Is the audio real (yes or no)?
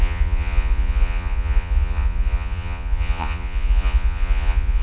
no